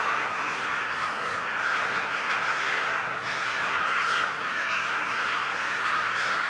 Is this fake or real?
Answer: fake